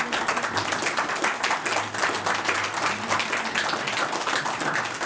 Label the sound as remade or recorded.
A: recorded